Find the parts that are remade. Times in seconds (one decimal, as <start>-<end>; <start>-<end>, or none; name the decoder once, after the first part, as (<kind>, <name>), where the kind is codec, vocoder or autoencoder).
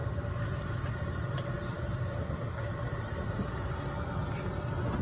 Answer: 2.2-2.6 (codec, SNAC)